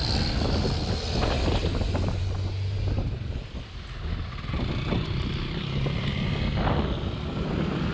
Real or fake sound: real